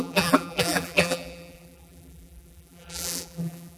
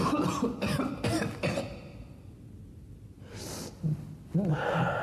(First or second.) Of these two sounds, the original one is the second